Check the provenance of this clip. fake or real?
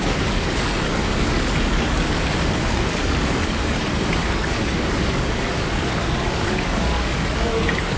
fake